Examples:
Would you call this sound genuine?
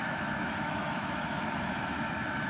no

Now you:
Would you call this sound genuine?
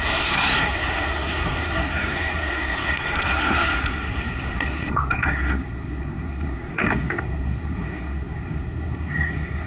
no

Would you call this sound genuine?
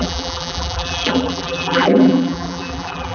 no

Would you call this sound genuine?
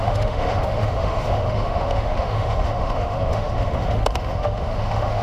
no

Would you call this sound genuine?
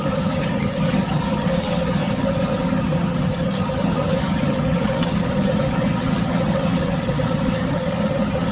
no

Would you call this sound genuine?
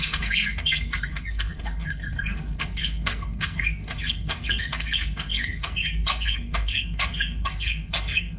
no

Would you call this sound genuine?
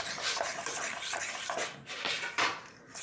yes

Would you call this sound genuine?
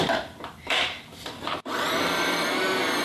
no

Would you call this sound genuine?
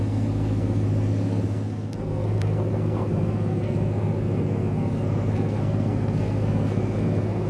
no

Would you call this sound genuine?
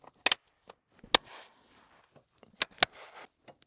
yes